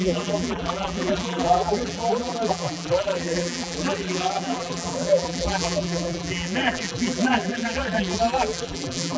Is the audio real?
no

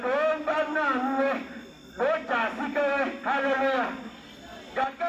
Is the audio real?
yes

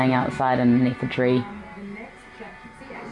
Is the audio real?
yes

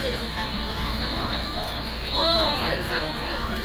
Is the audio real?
no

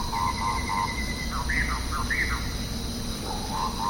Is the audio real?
yes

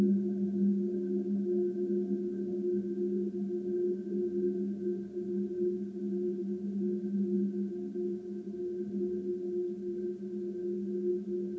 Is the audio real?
yes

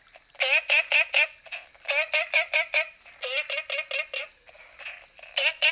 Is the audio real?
yes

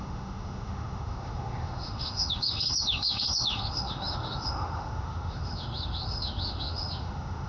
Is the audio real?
no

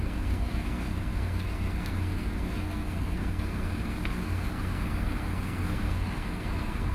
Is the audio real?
no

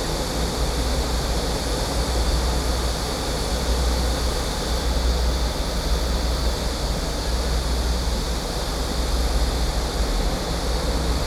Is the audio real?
yes